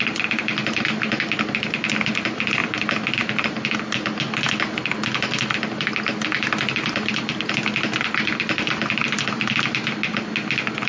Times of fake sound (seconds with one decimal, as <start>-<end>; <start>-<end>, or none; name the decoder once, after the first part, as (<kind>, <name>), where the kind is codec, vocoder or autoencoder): none

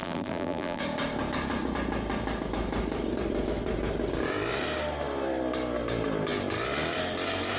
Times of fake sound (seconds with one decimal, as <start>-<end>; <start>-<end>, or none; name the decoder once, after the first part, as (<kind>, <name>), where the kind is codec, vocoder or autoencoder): 0.0-0.8 (vocoder, BigVGAN v2)

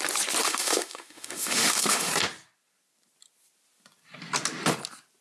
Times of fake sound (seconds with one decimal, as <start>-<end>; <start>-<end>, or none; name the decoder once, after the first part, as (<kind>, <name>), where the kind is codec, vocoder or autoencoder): 0.4-2.1 (autoencoder, DAC-VAE)

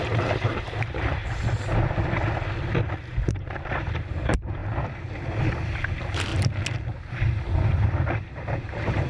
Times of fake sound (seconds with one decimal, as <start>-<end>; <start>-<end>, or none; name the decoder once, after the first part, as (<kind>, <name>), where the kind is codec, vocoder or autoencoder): 0.0-1.2 (vocoder, BigVGAN v2); 3.2-4.6; 5.5-6.3; 7.1-9.1

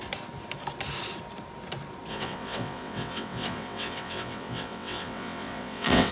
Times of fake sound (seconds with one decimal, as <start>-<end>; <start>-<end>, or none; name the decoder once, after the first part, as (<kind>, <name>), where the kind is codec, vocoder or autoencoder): 2.1-6.1 (vocoder, WaveNeXt)

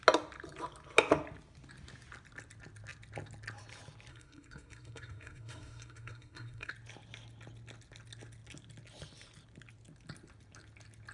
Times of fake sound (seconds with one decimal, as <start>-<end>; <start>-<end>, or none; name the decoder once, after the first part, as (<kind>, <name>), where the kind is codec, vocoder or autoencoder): 4.1-6.7 (codec, SNAC)